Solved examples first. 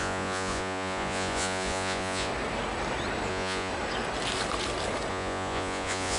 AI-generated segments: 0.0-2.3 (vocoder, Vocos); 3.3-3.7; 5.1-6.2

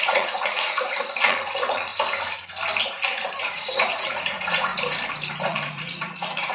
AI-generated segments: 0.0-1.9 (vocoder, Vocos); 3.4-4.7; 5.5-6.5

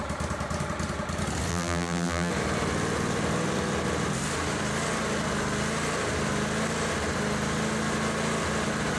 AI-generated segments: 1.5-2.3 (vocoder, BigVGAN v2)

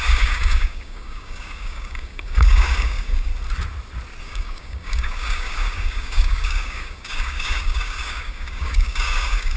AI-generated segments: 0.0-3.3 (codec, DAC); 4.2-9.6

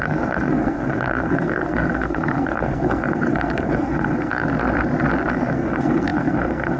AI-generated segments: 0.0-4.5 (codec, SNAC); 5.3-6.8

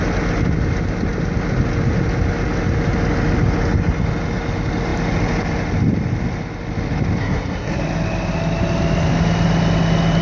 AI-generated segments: 7.2-7.7 (codec, SNAC)